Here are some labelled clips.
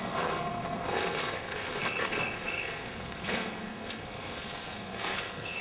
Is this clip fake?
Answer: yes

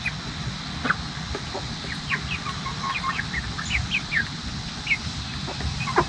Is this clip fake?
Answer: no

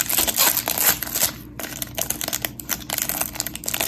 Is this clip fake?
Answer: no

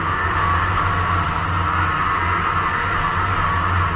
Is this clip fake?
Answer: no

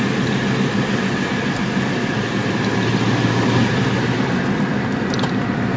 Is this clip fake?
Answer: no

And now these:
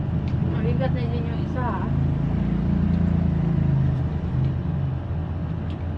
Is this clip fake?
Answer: no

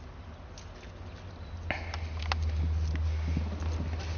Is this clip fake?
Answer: no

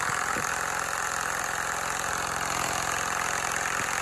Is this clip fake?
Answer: no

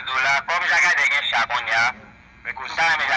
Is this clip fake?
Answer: no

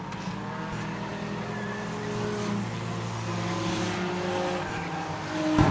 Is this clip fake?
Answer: no